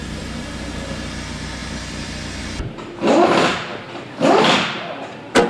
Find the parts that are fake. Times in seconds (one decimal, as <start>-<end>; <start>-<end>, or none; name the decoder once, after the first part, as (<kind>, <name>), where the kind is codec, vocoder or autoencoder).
none